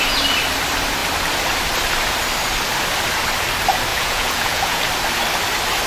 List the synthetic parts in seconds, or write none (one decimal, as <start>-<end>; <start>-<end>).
3.9-4.8